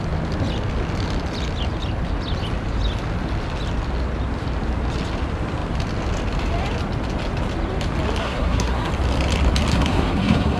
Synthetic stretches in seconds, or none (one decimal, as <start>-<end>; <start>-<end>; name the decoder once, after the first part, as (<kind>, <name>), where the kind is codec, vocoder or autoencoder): 8.2-8.9 (codec, SNAC); 9.7-10.6